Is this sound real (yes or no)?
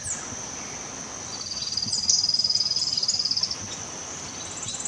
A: yes